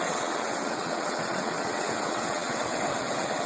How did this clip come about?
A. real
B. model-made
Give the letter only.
B